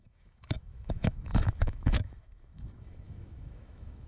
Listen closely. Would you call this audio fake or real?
fake